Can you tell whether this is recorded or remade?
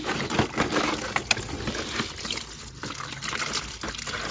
recorded